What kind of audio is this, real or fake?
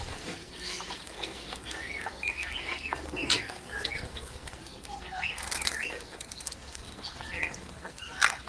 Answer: fake